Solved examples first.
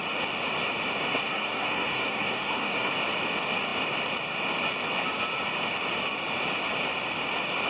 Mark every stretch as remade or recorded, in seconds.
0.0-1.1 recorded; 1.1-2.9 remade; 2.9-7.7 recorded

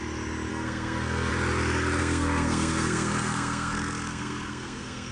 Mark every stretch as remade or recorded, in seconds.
0.0-0.5 recorded; 0.5-1.3 remade; 1.3-2.0 recorded; 2.0-5.1 remade

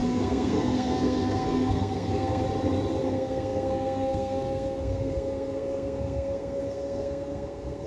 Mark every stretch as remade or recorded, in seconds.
0.0-2.4 remade; 2.4-3.0 recorded; 3.0-7.9 remade

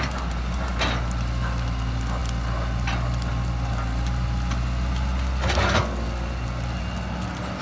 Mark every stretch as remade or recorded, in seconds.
0.0-7.6 recorded